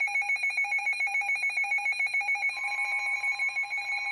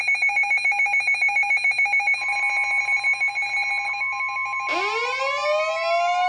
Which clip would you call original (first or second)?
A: second